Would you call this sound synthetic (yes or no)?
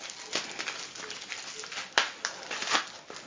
no